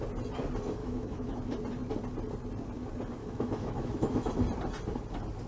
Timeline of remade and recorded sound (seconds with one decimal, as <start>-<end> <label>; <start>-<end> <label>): 0.0-0.8 recorded; 0.8-1.4 remade; 1.4-3.2 recorded; 3.2-4.3 remade; 4.3-5.5 recorded